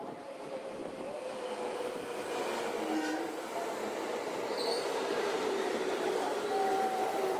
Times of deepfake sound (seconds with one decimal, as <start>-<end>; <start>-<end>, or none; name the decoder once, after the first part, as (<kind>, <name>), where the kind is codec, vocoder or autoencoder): 0.0-0.8 (vocoder, BigVGAN v2); 1.3-2.4; 4.1-7.4